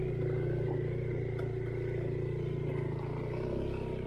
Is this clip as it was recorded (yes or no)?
yes